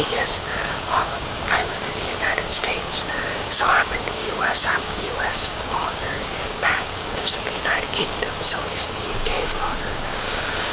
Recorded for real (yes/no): no